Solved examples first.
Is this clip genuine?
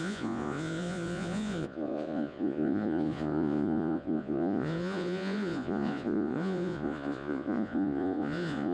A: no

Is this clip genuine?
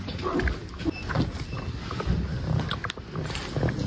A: yes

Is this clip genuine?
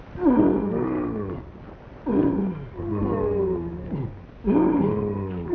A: yes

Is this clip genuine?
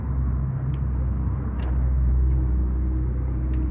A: yes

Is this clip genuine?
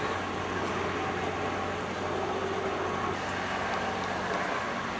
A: yes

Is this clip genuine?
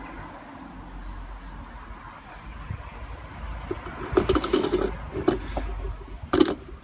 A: yes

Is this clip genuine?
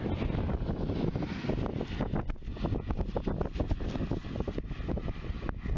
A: yes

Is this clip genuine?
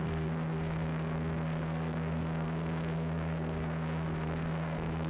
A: no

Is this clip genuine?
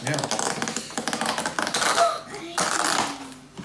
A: yes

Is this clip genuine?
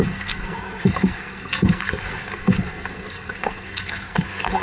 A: no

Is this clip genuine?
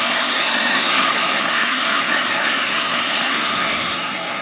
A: no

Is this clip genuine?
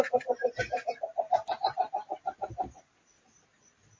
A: yes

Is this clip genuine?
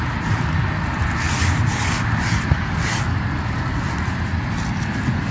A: yes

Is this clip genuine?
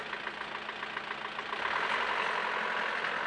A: yes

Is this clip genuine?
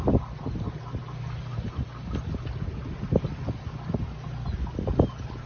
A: yes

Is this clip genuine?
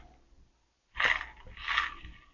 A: yes